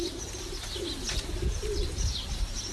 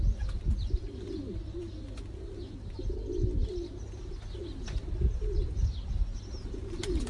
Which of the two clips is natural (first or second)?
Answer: second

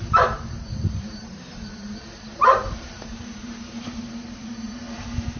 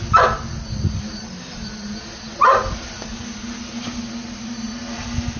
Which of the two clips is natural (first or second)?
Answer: second